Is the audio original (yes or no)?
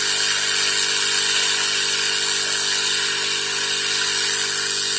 yes